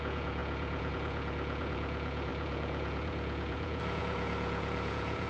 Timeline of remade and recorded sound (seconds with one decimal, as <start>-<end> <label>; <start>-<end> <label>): 0.0-5.3 remade

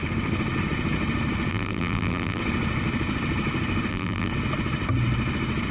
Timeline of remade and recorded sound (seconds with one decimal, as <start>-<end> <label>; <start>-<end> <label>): 0.0-1.5 recorded; 1.5-2.4 remade; 2.4-3.9 recorded; 3.9-4.3 remade; 4.3-5.7 recorded

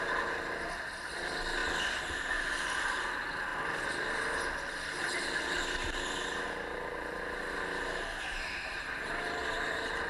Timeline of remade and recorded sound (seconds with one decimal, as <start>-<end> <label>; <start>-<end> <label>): 0.0-10.1 recorded